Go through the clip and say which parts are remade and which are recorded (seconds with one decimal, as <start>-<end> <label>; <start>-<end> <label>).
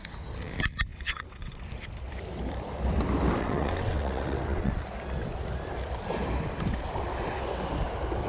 0.0-0.9 recorded; 0.9-1.6 remade; 1.6-3.4 recorded; 3.4-4.7 remade; 4.7-8.3 recorded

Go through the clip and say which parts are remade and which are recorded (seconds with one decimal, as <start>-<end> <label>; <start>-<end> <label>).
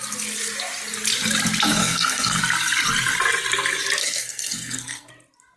0.0-1.8 recorded; 1.8-2.4 remade; 2.4-4.0 recorded; 4.0-5.1 remade; 5.1-5.6 recorded